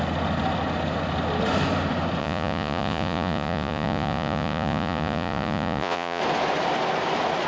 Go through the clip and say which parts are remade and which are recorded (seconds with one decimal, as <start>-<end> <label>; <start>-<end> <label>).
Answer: 0.0-2.2 recorded; 2.2-6.2 remade; 6.2-7.5 recorded